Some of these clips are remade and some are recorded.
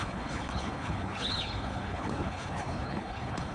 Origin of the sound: remade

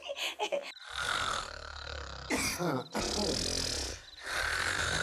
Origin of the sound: recorded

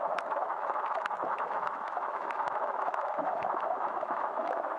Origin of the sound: remade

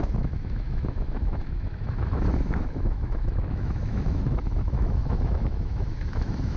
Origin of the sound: remade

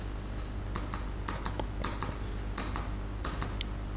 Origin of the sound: recorded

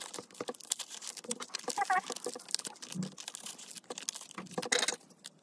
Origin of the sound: recorded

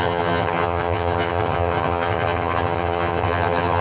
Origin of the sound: remade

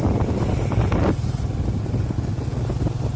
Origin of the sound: recorded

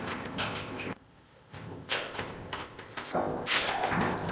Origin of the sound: remade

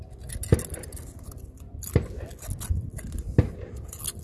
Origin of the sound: recorded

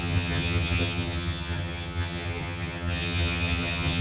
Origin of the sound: remade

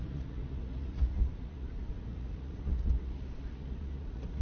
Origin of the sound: remade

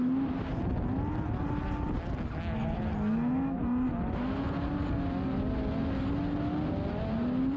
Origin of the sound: recorded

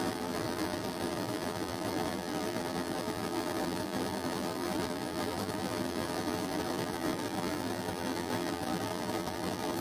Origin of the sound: remade